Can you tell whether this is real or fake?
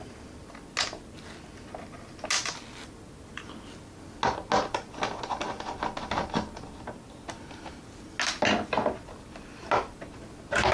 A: real